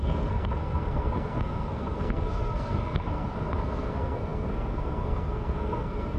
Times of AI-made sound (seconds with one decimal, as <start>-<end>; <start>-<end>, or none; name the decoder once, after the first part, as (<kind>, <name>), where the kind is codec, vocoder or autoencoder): 0.0-6.2 (codec, SNAC)